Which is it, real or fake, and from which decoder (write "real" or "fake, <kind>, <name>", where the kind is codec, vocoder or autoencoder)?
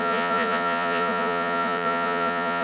fake, vocoder, Vocos